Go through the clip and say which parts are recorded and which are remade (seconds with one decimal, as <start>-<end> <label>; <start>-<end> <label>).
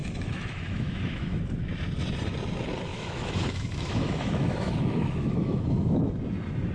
0.0-1.4 remade; 1.4-2.9 recorded; 2.9-6.1 remade; 6.1-6.7 recorded